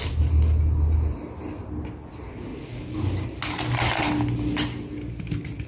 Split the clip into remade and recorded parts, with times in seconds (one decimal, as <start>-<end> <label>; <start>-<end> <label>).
0.0-5.7 recorded